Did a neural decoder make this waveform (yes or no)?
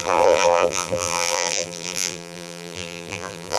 yes